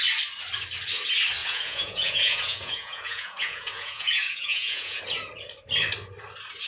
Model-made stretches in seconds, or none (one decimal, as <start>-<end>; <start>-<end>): 1.4-5.0